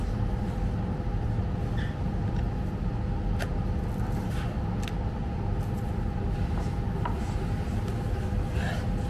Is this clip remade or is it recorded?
recorded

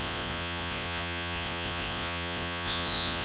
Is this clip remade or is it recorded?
remade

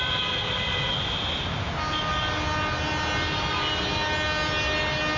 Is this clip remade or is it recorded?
recorded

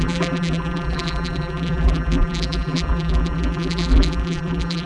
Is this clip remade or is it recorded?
remade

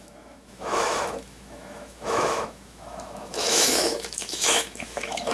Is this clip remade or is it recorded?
remade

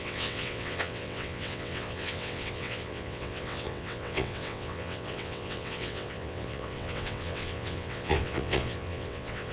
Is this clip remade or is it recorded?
remade